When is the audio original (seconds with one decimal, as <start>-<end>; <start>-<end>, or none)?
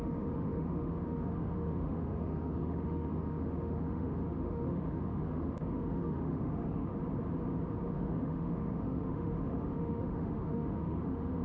6.9-7.8